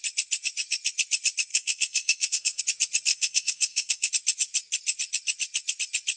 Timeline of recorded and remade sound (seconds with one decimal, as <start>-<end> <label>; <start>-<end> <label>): 0.0-1.5 recorded; 1.5-2.6 remade; 2.6-3.1 recorded; 3.1-4.1 remade; 4.1-6.2 recorded